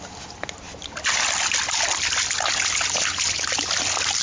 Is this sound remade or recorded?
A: recorded